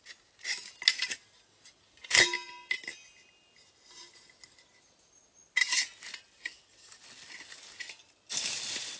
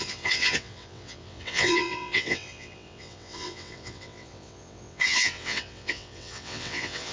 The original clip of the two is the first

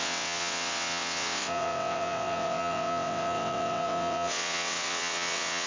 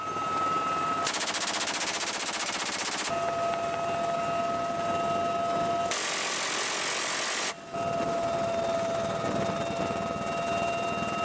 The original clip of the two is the second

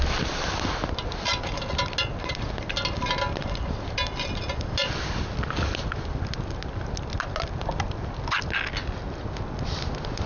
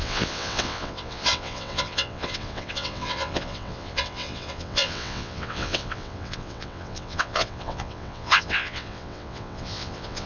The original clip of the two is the first